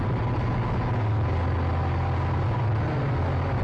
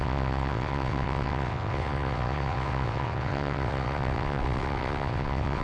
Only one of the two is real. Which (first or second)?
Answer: first